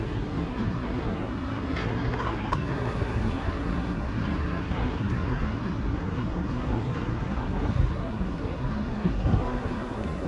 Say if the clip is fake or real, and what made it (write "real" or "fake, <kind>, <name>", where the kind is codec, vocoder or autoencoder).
fake, codec, SNAC